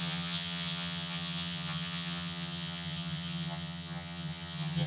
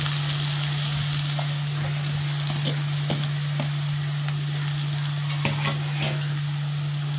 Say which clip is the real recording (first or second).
second